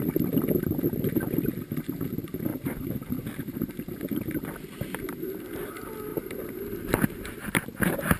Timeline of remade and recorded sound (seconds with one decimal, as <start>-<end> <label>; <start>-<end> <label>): 0.0-2.5 recorded; 2.5-4.0 remade; 4.0-6.1 recorded; 6.1-6.6 remade; 6.6-8.2 recorded